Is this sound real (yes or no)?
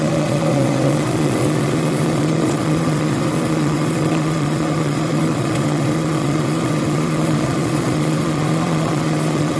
no